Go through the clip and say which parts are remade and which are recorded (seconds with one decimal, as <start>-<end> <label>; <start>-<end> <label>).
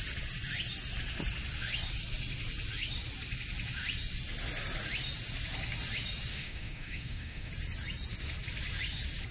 0.0-6.3 recorded; 6.3-7.5 remade; 7.5-9.3 recorded